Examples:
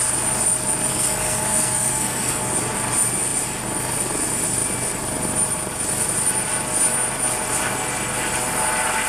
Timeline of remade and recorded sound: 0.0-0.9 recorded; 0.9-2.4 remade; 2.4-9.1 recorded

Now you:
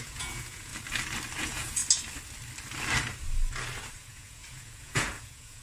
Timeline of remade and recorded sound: 0.0-0.7 remade; 0.7-1.4 recorded; 1.4-1.8 remade; 1.8-4.1 recorded; 4.1-5.6 remade

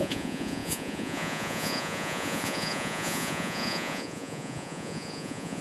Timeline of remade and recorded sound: 0.0-5.6 remade